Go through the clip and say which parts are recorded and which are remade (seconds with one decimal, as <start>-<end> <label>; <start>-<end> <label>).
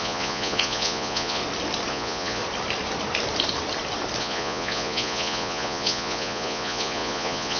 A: 0.0-1.4 remade; 1.4-1.9 recorded; 1.9-2.4 remade; 2.4-4.2 recorded; 4.2-7.6 remade